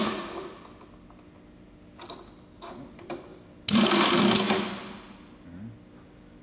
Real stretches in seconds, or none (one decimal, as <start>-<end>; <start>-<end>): 0.0-6.4